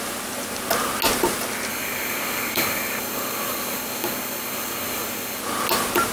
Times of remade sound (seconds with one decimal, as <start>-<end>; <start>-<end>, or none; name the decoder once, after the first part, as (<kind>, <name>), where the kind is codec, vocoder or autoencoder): 1.7-5.4 (codec, DAC)